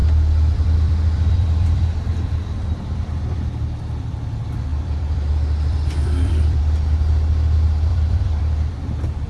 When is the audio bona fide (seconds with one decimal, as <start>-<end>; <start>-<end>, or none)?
4.1-4.7; 6.6-7.9; 8.7-9.3